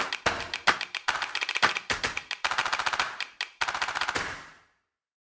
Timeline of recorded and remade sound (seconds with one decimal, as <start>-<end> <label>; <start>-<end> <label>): 0.0-5.3 recorded